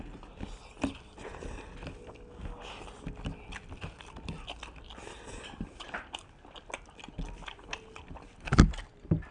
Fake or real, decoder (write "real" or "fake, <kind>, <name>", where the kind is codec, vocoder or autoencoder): real